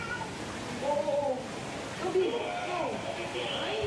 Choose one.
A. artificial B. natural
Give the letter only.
B